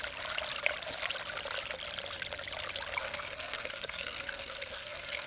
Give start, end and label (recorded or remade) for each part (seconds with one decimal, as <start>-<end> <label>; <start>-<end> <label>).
0.0-3.0 recorded; 3.0-5.3 remade